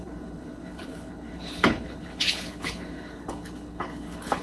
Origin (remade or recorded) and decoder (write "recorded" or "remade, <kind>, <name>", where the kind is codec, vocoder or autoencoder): remade, codec, HILCodec